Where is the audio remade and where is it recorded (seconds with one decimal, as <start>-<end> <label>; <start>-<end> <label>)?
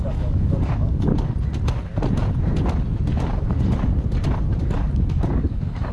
0.0-1.1 remade; 1.1-4.6 recorded; 4.6-5.9 remade